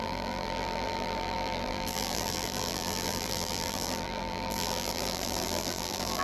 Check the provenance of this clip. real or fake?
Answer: fake